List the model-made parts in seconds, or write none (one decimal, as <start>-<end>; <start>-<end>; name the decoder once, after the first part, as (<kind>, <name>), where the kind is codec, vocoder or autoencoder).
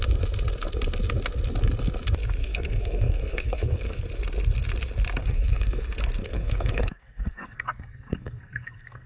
2.4-4.0 (codec, SNAC); 5.2-5.8; 6.2-9.1